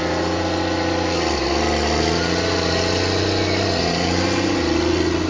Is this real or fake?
real